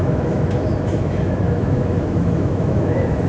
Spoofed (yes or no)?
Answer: yes